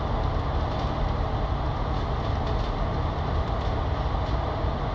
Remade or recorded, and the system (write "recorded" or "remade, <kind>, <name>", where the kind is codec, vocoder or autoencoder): recorded